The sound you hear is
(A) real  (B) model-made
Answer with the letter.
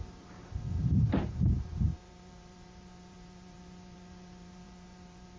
B